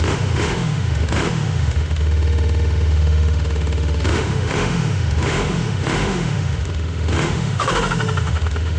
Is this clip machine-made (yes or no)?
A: yes